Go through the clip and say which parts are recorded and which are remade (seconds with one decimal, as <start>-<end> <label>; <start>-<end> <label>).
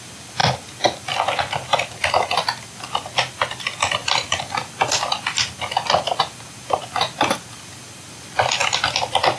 0.0-9.4 recorded